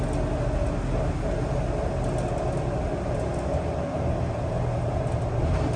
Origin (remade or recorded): recorded